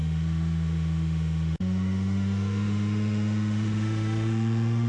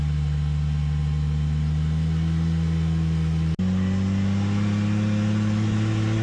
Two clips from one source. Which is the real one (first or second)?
second